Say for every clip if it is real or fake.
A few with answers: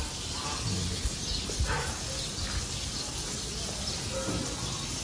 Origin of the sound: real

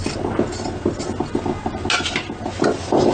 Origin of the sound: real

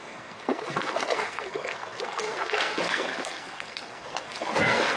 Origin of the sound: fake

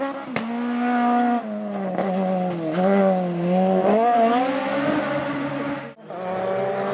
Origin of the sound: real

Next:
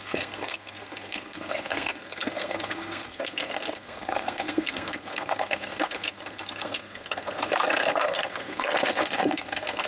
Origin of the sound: fake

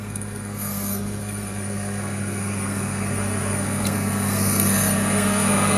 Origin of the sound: fake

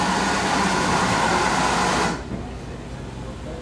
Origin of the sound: real